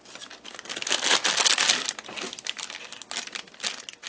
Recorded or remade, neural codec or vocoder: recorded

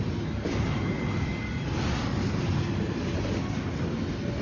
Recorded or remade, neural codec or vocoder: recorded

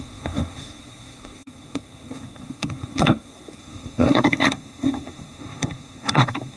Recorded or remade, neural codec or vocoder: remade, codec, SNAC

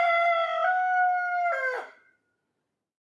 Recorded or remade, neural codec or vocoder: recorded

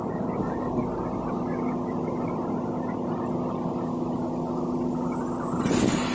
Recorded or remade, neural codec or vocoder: recorded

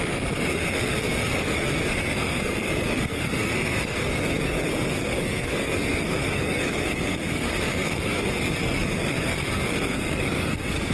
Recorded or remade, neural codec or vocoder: remade, codec, SNAC